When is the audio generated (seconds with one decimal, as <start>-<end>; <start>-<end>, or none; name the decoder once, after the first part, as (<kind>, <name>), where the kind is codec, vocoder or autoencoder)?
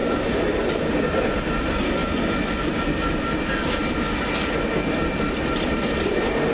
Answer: none